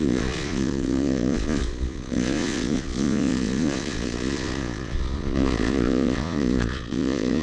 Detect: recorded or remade remade